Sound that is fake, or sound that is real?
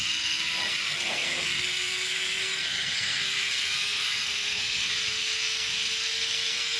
fake